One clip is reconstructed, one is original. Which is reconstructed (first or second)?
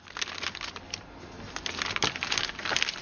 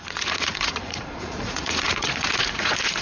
second